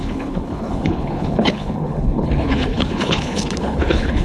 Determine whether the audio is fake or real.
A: fake